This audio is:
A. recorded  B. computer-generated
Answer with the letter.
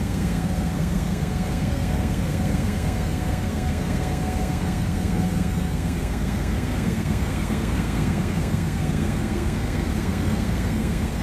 B